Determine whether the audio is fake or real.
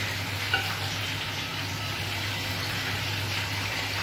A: real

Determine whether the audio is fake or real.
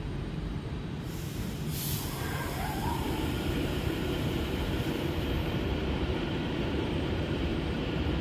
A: fake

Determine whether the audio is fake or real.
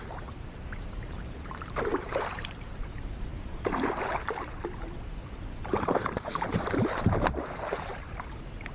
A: fake